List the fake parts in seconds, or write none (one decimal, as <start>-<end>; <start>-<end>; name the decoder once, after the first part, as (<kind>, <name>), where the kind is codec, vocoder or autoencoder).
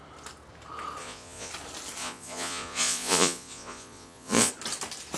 1.0-1.5 (vocoder, Vocos); 2.0-4.5